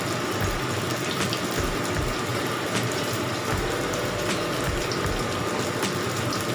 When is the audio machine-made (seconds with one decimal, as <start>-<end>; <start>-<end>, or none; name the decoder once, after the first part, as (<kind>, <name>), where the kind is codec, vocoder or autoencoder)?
2.3-4.8 (vocoder, BigVGAN v2)